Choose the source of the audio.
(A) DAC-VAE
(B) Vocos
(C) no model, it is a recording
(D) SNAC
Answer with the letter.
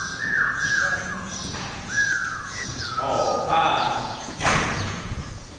B